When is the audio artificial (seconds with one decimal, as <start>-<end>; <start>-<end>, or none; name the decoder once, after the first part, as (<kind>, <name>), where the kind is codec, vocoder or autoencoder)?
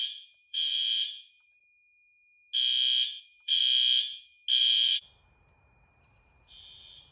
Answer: 0.0-1.6 (vocoder, BigVGAN v2); 3.2-3.6; 4.6-7.1